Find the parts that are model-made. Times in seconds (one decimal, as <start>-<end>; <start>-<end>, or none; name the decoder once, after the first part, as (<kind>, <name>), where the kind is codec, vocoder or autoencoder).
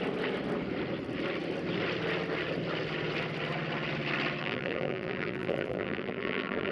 4.4-6.7 (vocoder, BigVGAN v2)